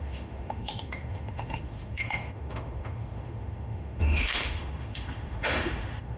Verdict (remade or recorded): remade